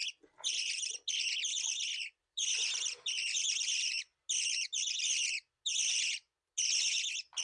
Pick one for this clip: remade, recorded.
recorded